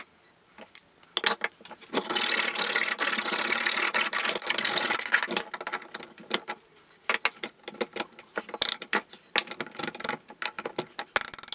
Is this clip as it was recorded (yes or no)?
yes